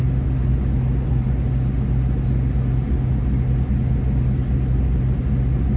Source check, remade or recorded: recorded